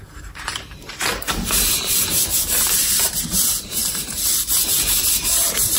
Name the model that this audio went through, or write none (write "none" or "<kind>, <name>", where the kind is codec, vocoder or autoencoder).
vocoder, BigVGAN v2